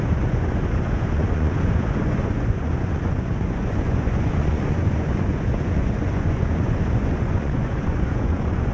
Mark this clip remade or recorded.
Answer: remade